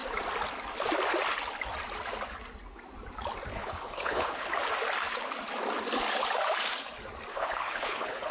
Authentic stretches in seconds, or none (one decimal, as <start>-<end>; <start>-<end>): 0.0-3.5; 4.5-7.3